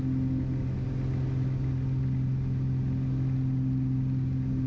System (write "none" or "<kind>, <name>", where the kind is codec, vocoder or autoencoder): none